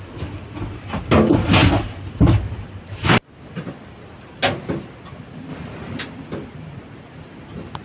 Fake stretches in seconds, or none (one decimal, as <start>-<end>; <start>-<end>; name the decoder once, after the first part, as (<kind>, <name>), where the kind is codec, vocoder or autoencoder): none